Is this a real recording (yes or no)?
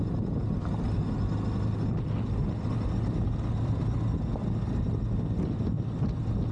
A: yes